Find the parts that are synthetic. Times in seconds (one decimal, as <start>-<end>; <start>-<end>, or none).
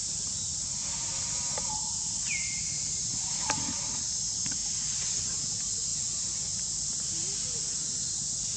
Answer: none